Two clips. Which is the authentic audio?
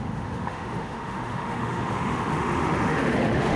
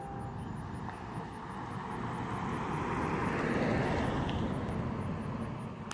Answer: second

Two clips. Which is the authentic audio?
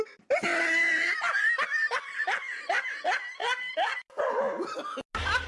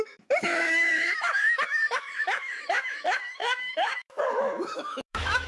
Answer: first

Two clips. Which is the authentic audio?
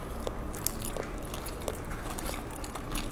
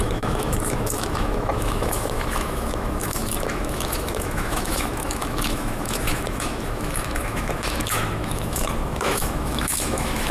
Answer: first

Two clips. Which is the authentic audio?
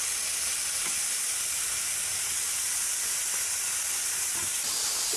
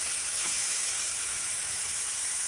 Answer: first